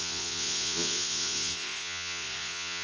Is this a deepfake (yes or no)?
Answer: yes